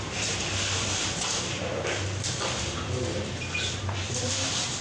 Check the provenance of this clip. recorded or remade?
recorded